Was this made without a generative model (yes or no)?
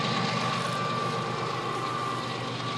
yes